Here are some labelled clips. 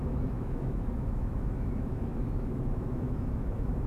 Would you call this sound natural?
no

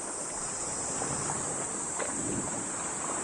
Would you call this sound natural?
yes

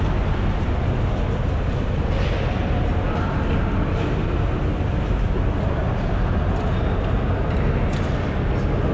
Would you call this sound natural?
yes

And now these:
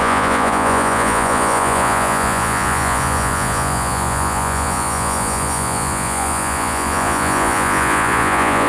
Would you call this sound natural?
no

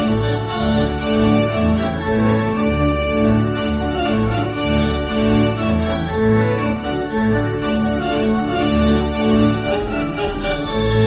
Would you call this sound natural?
no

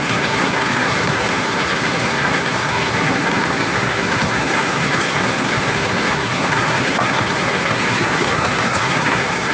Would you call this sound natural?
no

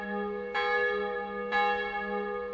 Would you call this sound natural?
yes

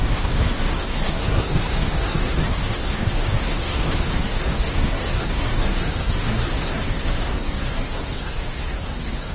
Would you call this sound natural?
no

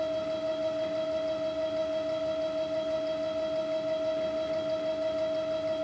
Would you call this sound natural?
yes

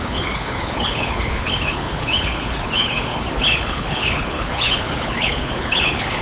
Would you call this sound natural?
no